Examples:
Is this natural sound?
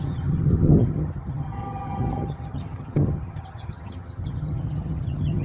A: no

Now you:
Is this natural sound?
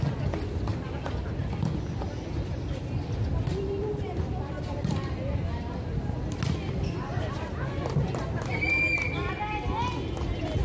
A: yes